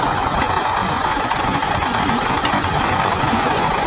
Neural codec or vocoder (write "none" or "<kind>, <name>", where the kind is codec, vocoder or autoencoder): vocoder, Vocos